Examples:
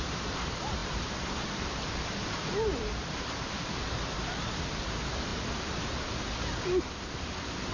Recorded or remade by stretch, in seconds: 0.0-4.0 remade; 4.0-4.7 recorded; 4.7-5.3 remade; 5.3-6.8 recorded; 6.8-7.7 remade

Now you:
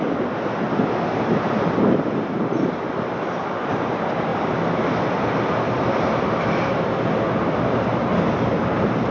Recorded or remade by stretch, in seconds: 0.0-9.1 recorded

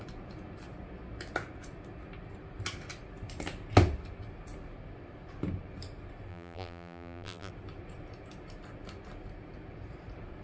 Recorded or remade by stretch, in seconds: 0.0-6.3 recorded; 6.3-7.5 remade; 7.5-10.4 recorded

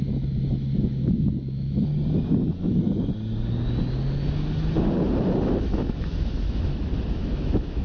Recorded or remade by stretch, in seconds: 0.0-1.9 remade; 1.9-5.6 recorded; 5.6-7.8 remade

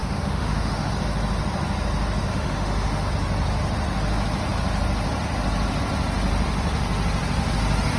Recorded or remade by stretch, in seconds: 0.0-0.9 remade; 0.9-2.3 recorded; 2.3-3.1 remade; 3.1-8.0 recorded

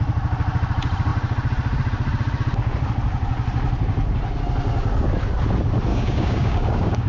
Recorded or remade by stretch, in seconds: 0.0-5.9 recorded; 5.9-7.1 remade

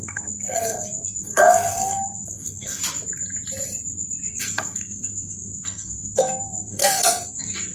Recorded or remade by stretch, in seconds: 0.0-2.8 remade; 2.8-4.3 recorded; 4.3-7.7 remade

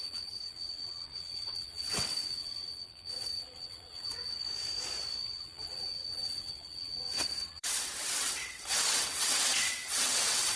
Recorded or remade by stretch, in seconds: 0.0-4.4 remade; 4.4-5.3 recorded; 5.3-10.6 remade